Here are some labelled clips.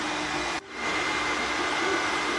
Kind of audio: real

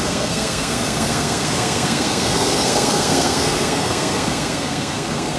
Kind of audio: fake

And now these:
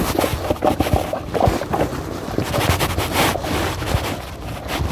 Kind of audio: real